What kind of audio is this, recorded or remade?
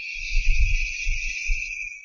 recorded